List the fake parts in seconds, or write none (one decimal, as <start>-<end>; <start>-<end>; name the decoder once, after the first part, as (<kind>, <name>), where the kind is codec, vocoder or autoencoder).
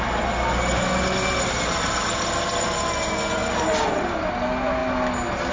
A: none